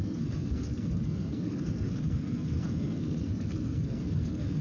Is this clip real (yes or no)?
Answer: no